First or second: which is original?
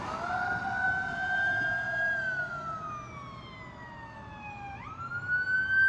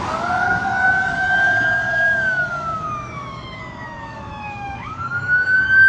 first